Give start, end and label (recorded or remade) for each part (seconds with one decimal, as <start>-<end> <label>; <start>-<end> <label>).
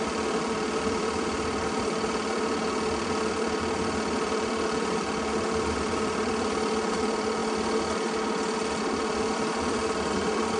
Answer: 0.0-7.4 remade; 7.4-8.8 recorded; 8.8-10.6 remade